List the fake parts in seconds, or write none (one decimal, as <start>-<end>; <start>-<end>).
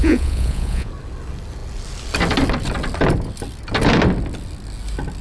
0.0-0.9